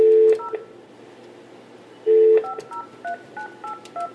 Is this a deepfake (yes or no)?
no